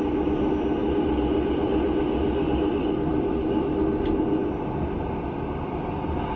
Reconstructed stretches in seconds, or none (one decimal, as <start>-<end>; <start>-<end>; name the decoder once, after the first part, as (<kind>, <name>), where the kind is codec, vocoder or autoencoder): none